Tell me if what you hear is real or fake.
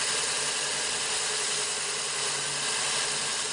real